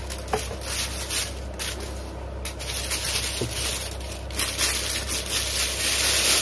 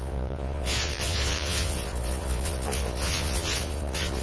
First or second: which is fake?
second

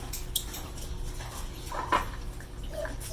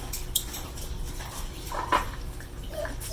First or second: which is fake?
second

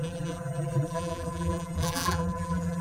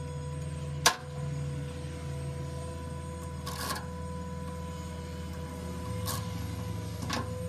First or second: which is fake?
first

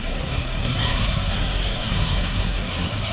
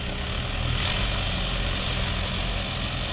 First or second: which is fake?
first